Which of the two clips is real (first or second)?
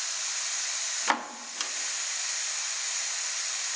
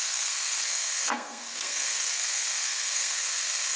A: first